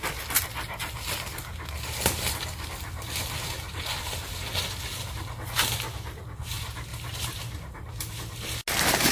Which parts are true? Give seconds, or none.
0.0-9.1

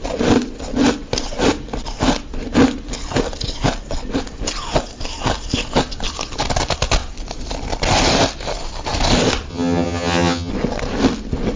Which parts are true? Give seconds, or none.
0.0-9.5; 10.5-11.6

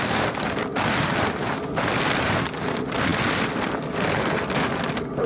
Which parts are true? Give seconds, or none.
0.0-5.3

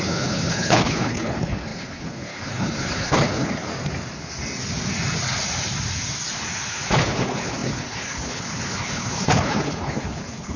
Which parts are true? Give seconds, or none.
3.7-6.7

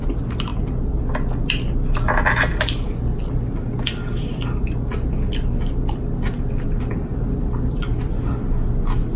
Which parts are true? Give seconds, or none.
0.0-9.2

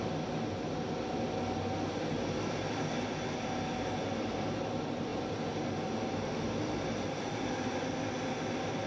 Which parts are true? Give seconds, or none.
0.0-8.9

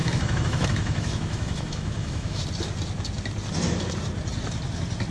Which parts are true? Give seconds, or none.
2.4-5.1

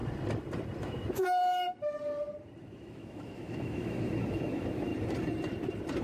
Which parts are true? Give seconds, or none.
0.0-0.8; 1.4-2.6; 4.9-6.0